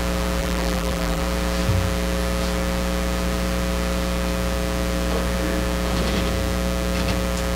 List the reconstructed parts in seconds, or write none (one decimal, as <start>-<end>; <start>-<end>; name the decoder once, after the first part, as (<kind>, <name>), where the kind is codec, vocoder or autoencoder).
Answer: 0.4-1.2 (vocoder, BigVGAN v2)